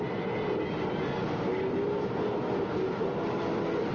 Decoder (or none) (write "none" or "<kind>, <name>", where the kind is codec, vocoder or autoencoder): none